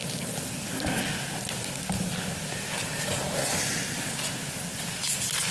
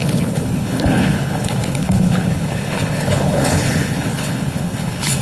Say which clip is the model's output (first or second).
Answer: second